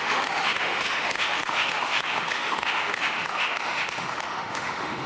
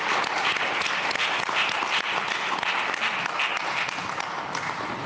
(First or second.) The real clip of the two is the second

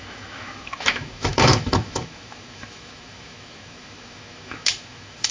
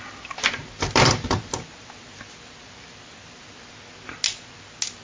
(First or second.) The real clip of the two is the second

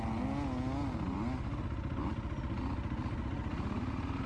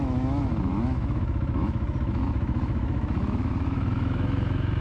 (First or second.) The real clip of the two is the first